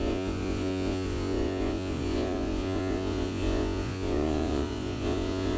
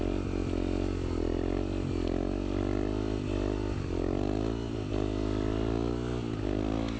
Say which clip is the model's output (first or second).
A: first